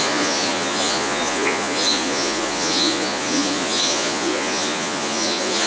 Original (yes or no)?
no